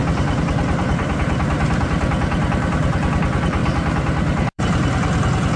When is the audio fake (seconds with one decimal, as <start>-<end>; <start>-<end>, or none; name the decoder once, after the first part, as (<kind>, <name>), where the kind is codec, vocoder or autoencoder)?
0.0-3.2 (vocoder, BigVGAN v2); 3.6-4.6